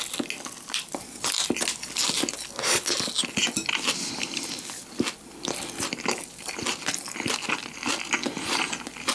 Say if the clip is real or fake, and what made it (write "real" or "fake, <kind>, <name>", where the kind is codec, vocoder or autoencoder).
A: real